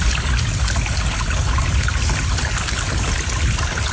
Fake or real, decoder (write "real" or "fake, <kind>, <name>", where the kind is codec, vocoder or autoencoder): real